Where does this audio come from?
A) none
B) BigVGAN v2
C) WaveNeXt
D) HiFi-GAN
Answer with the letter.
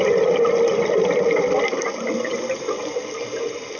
A